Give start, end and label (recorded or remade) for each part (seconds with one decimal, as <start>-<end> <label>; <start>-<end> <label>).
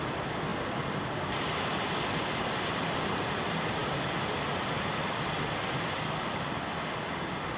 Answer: 0.0-7.6 recorded